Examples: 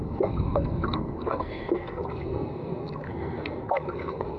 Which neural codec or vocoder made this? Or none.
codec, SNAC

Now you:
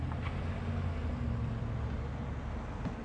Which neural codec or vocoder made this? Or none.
none